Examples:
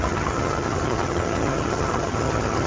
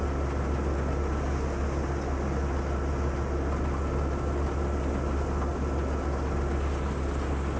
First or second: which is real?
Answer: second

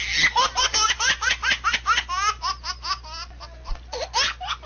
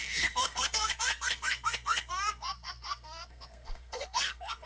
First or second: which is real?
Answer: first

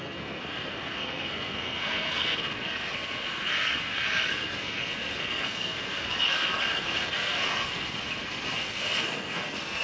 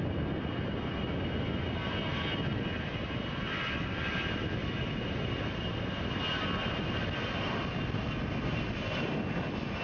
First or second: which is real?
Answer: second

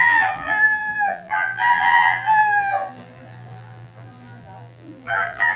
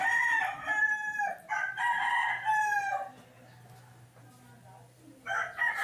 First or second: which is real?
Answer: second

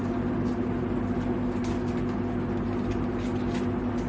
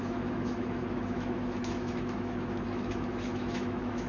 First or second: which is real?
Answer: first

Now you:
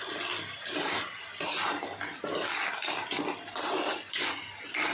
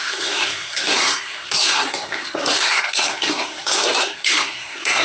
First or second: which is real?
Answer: first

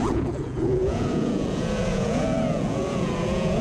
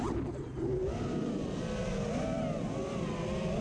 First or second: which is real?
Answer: second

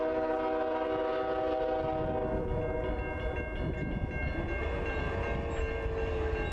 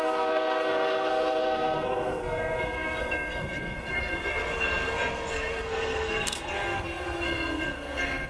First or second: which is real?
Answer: first